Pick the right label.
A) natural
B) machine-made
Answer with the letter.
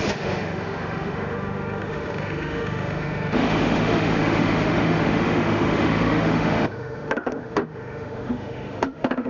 B